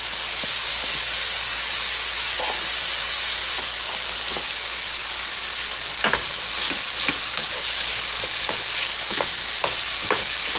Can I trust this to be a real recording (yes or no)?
no